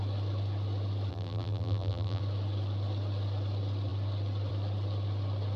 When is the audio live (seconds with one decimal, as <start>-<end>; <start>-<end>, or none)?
0.0-1.1; 2.2-5.6